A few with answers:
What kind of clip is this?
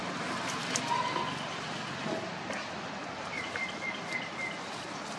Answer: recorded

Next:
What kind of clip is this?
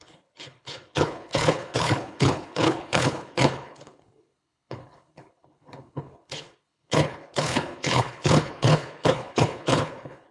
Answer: remade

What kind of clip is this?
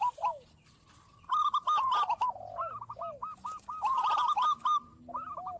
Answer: recorded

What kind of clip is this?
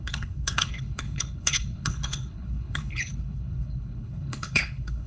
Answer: remade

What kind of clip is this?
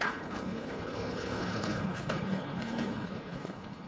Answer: remade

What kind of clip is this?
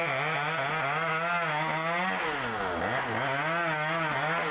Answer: recorded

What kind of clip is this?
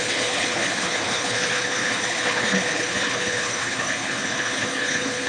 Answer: remade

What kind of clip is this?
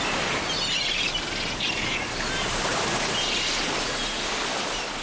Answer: recorded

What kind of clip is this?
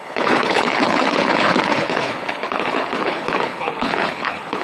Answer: remade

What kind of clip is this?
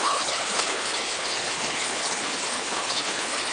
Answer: remade